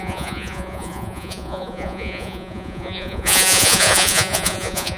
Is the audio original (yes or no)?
no